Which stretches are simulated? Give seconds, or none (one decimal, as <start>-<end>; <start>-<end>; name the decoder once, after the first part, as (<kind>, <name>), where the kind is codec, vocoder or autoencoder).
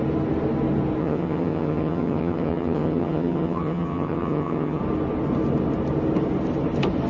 1.0-4.8 (vocoder, HiFi-GAN)